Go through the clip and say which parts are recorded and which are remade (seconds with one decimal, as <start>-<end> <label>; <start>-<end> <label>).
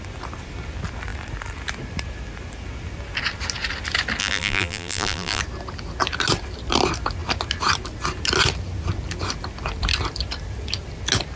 0.0-4.2 recorded; 4.2-5.4 remade; 5.4-11.4 recorded